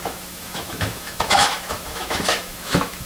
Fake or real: fake